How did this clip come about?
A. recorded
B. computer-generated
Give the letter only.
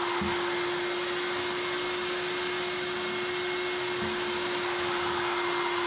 A